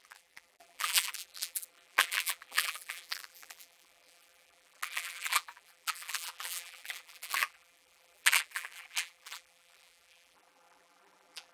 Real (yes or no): no